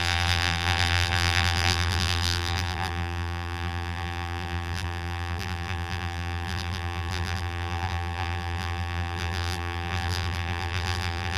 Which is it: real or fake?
fake